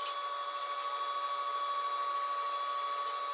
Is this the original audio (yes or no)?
yes